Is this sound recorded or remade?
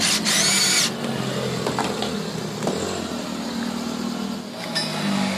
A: recorded